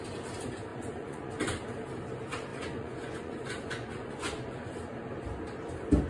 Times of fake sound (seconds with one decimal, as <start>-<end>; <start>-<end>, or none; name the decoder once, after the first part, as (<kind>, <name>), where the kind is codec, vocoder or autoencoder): 0.7-1.3 (vocoder, Vocos); 2.5-4.7